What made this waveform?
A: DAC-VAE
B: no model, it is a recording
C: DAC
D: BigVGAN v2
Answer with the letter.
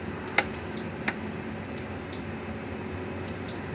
B